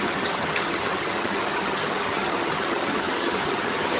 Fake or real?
fake